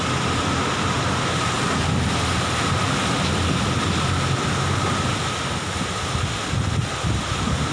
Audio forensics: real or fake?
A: real